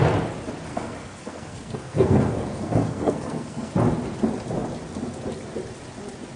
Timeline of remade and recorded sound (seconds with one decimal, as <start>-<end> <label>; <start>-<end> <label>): 0.0-0.7 recorded; 0.7-3.7 remade; 3.7-6.4 recorded